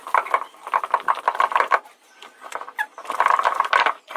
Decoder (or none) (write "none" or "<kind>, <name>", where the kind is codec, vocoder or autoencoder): none